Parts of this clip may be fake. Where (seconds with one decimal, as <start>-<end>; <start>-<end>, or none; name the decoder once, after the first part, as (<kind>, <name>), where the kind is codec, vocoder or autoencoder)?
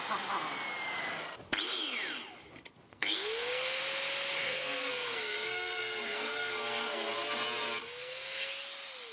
2.9-3.8 (codec, SNAC); 4.4-7.1; 7.8-8.5